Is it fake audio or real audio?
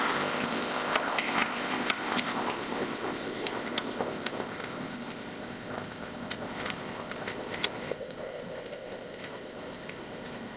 fake